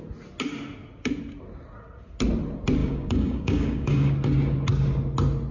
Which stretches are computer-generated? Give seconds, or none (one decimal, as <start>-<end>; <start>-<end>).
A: 2.8-4.1